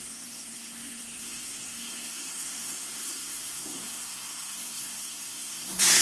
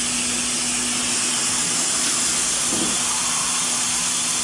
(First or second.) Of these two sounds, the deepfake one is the first